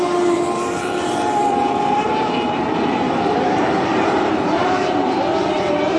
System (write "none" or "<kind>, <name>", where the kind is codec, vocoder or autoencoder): vocoder, BigVGAN v2